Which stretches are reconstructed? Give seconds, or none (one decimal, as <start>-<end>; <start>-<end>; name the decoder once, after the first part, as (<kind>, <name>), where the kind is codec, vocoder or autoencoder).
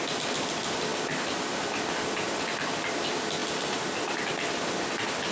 none